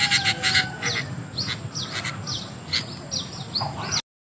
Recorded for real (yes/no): yes